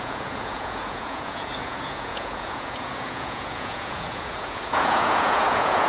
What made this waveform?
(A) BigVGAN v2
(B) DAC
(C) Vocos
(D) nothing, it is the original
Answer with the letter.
C